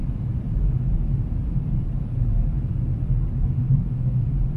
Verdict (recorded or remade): recorded